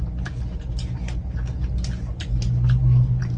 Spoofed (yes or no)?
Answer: no